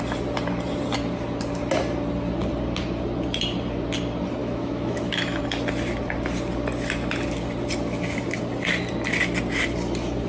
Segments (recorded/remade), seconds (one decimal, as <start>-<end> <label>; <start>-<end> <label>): 0.0-4.4 recorded; 4.4-5.4 remade; 5.4-10.3 recorded